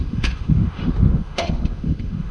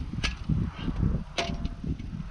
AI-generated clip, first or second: first